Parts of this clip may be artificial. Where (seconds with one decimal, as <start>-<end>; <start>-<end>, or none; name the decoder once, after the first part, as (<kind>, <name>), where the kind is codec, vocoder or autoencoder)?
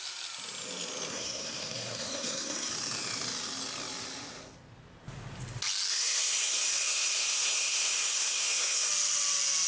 1.1-2.7 (codec, SNAC); 5.9-8.9